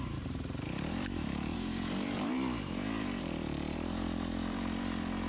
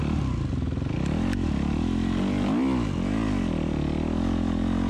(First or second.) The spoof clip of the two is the first